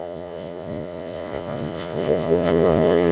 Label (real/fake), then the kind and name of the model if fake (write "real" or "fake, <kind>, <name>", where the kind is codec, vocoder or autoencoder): fake, vocoder, Vocos